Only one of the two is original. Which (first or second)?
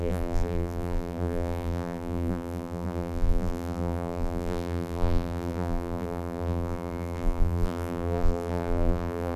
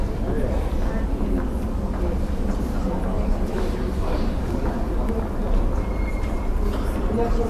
second